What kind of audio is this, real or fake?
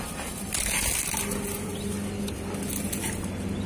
real